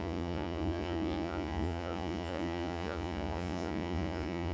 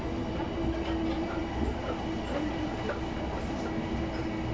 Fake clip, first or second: first